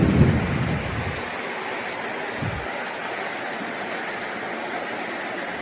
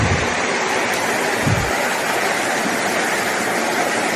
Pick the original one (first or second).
first